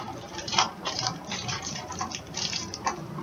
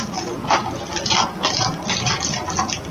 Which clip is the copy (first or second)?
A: first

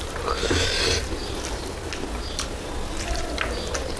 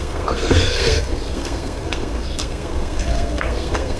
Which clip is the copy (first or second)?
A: second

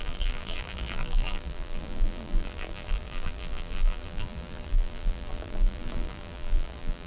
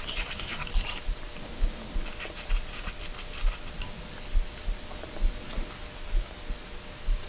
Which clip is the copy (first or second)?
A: first